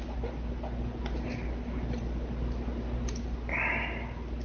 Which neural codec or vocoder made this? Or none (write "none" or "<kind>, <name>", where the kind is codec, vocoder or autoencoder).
none